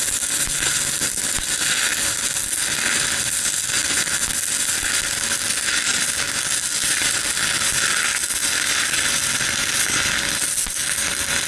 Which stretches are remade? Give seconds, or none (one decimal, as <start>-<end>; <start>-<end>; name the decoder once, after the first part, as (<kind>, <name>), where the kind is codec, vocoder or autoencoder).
none